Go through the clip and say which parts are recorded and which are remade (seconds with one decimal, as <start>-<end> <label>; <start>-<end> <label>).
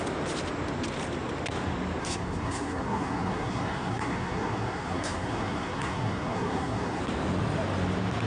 0.0-2.0 recorded; 2.0-7.0 remade; 7.0-8.3 recorded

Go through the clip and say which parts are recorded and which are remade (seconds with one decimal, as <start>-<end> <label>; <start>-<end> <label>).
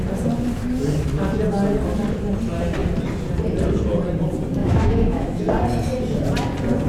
0.0-4.6 recorded; 4.6-5.4 remade; 5.4-6.9 recorded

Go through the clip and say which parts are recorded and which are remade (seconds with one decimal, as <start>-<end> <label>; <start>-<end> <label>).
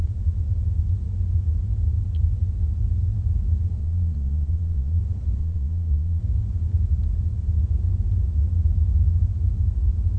0.0-3.8 recorded; 3.8-5.0 remade; 5.0-5.4 recorded; 5.4-6.2 remade; 6.2-10.2 recorded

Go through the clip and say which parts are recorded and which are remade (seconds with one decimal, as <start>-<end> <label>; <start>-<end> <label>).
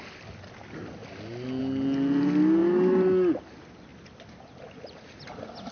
0.0-5.7 recorded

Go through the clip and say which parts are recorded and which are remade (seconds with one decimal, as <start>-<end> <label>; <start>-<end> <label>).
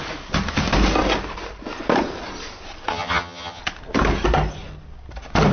0.0-2.9 recorded; 2.9-3.6 remade; 3.6-5.5 recorded